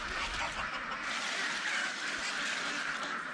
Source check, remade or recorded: recorded